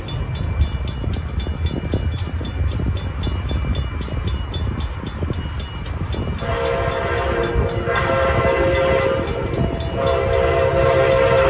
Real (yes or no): yes